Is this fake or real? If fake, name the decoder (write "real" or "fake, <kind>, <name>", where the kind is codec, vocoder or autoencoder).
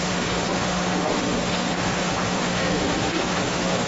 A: fake, autoencoder, DAC-VAE